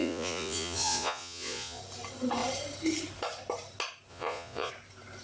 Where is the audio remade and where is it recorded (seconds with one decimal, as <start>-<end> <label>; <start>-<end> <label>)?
0.0-1.8 remade; 1.8-4.1 recorded; 4.1-4.7 remade; 4.7-5.2 recorded